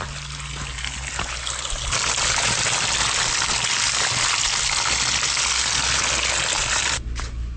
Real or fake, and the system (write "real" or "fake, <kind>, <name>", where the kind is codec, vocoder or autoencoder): real